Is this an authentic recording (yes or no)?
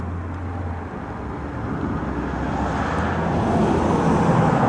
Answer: yes